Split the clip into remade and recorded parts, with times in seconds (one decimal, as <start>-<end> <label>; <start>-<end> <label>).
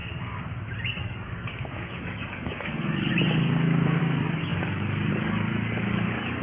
0.0-1.0 recorded; 1.0-1.5 remade; 1.5-2.0 recorded; 2.0-3.1 remade; 3.1-4.0 recorded; 4.0-6.4 remade